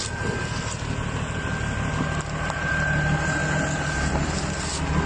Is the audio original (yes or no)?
yes